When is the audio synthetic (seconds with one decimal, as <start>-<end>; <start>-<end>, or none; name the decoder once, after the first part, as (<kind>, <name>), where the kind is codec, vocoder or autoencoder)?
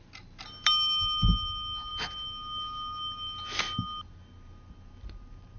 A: none